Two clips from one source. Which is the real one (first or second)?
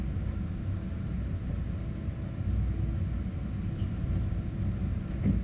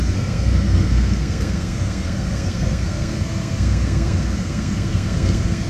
first